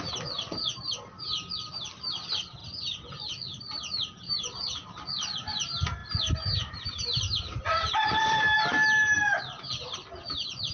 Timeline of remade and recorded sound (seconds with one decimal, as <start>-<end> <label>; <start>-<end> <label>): 0.0-2.6 recorded; 2.6-4.9 remade; 4.9-10.7 recorded